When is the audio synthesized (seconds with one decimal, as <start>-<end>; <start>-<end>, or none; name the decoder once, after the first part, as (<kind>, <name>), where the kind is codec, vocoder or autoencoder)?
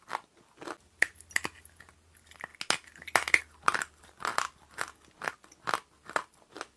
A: none